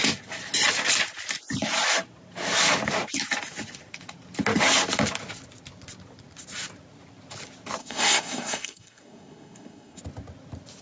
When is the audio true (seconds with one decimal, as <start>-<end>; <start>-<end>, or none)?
0.0-7.8; 10.0-10.8